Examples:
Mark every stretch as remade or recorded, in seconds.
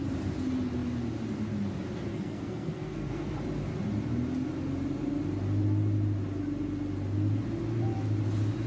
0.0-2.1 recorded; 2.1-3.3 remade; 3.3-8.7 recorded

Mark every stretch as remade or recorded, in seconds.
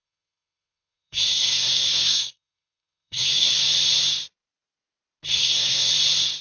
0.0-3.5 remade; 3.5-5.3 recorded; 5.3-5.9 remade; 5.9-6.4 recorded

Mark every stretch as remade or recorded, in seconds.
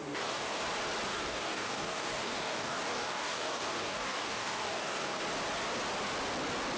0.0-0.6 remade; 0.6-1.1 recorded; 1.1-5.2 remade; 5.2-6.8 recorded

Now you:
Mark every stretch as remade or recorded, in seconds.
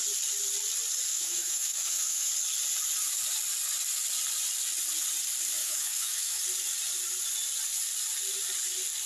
0.0-1.1 recorded; 1.1-2.3 remade; 2.3-5.6 recorded; 5.6-6.4 remade; 6.4-9.1 recorded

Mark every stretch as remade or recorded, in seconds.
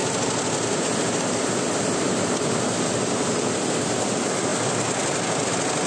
0.0-5.9 recorded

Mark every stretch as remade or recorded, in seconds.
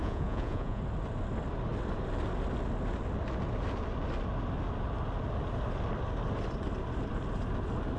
0.0-0.8 remade; 0.8-8.0 recorded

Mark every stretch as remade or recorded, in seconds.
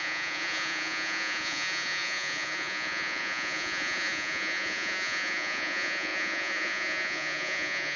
0.0-8.0 remade